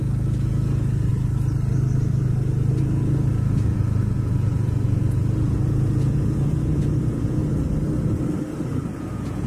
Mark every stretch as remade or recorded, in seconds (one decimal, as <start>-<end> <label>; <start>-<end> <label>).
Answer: 0.0-1.1 remade; 1.1-2.8 recorded; 2.8-7.4 remade; 7.4-9.0 recorded; 9.0-9.5 remade

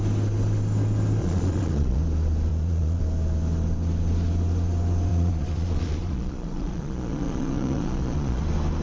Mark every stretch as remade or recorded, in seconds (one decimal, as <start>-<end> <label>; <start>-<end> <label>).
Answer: 0.0-1.2 recorded; 1.2-2.0 remade; 2.0-2.5 recorded; 2.5-3.0 remade; 3.0-5.1 recorded; 5.1-8.4 remade; 8.4-8.8 recorded

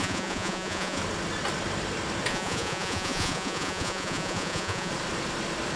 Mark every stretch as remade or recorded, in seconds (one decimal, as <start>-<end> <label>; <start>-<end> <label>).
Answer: 0.0-1.0 remade; 1.0-2.3 recorded; 2.3-4.9 remade; 4.9-5.8 recorded

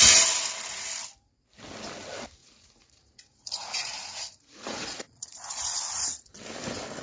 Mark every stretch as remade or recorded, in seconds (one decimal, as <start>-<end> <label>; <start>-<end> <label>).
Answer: 0.0-2.4 recorded; 2.4-6.3 remade; 6.3-7.0 recorded

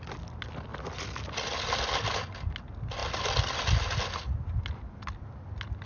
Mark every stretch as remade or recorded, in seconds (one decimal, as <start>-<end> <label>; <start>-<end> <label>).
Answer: 0.0-5.9 recorded